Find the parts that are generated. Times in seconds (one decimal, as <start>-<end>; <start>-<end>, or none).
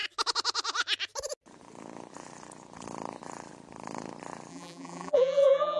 4.5-5.8